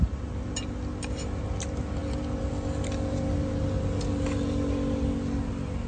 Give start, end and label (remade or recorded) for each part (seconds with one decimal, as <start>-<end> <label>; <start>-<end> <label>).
0.0-5.9 recorded